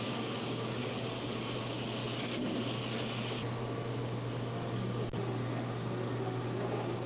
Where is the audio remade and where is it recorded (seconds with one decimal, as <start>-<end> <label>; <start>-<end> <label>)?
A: 0.0-0.8 remade; 0.8-1.6 recorded; 1.6-2.0 remade; 2.0-6.2 recorded; 6.2-7.1 remade